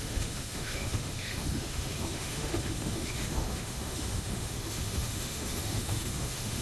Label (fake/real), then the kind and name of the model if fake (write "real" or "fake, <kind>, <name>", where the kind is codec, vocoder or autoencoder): fake, autoencoder, DAC-VAE